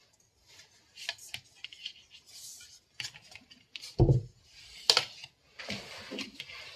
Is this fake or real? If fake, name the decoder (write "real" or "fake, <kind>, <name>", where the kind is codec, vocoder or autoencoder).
real